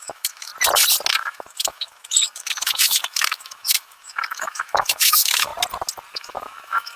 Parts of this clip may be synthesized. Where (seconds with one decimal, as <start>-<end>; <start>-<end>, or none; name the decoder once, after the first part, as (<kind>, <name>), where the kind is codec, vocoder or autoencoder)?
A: 0.0-0.5 (autoencoder, DAC-VAE); 1.1-5.5; 6.1-7.0